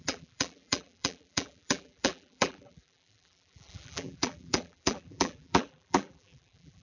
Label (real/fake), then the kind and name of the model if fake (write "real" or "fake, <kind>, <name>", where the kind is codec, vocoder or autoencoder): fake, vocoder, BigVGAN v2